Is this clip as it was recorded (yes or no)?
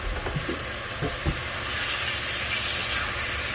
yes